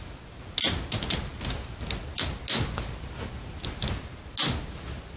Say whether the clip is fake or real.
real